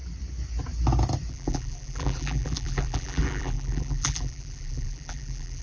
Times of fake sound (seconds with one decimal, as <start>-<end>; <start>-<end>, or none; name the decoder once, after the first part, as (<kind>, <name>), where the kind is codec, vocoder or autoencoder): 1.3-5.6 (vocoder, BigVGAN v2)